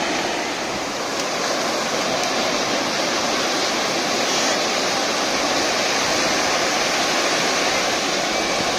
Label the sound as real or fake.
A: real